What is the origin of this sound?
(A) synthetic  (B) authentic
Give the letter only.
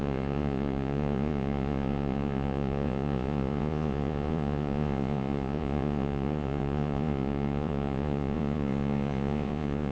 A